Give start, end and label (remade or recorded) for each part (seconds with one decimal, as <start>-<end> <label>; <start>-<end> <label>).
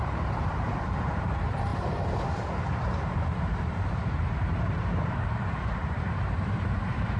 0.0-7.2 remade